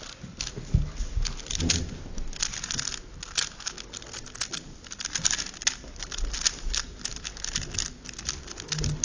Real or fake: real